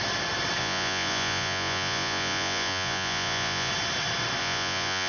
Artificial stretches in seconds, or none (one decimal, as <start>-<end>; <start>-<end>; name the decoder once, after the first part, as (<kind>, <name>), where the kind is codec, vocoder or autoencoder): 0.6-3.7 (vocoder, Vocos); 4.4-5.1